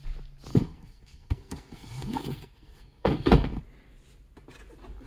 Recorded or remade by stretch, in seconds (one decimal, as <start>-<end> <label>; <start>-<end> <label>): 0.0-0.5 recorded; 0.5-3.6 remade; 3.6-5.1 recorded